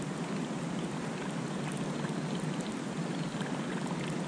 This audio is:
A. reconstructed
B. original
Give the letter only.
B